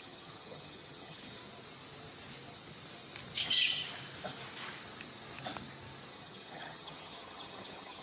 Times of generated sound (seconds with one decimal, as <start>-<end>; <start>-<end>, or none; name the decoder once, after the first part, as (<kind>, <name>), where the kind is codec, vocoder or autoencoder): 0.0-1.4 (vocoder, HiFi-GAN); 6.1-8.0